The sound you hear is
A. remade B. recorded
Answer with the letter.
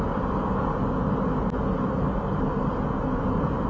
B